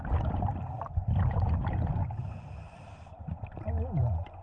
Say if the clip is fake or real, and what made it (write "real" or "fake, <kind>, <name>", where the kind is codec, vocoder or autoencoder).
real